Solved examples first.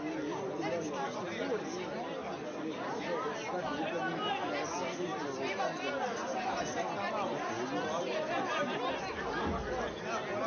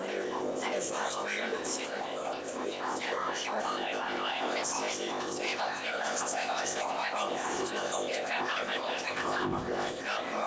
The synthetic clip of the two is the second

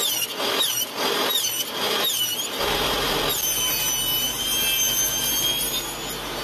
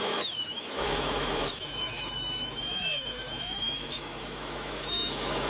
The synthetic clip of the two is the second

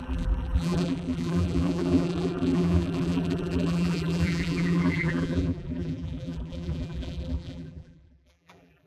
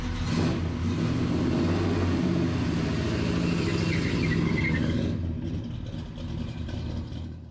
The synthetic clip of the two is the first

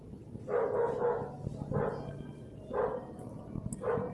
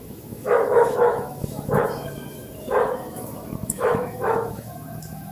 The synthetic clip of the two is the second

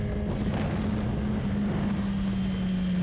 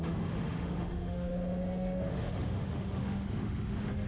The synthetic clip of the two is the second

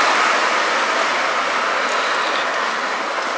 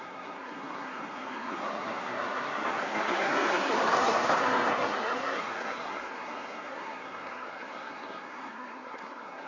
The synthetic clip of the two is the second